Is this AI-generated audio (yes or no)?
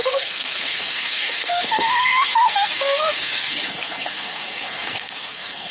yes